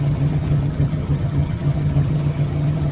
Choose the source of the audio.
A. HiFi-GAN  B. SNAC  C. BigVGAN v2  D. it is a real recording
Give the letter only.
A